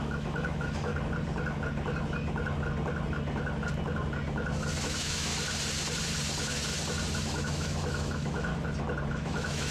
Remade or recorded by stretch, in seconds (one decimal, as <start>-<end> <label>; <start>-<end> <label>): 0.0-0.9 remade; 0.9-4.8 recorded; 4.8-5.3 remade; 5.3-7.2 recorded; 7.2-8.5 remade; 8.5-9.1 recorded; 9.1-9.7 remade